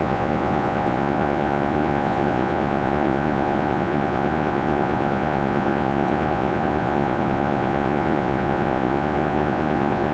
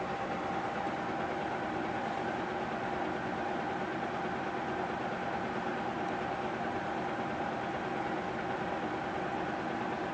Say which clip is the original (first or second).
second